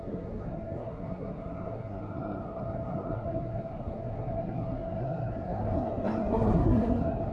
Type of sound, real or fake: fake